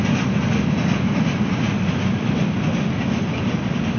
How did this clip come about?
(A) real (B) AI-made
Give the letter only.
A